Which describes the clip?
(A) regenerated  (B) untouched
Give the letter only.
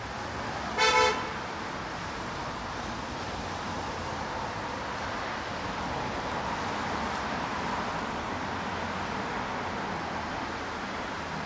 B